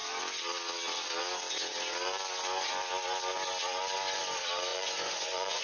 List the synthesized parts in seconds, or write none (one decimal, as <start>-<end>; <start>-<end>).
4.7-5.6